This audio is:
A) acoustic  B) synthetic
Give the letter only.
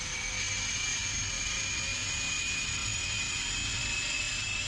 A